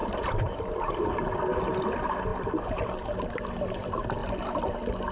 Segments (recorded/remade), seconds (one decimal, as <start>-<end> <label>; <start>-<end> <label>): 0.0-1.0 remade; 1.0-2.3 recorded; 2.3-2.9 remade; 2.9-5.1 recorded